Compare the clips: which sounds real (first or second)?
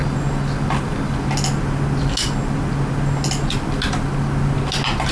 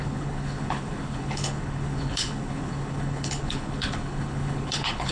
first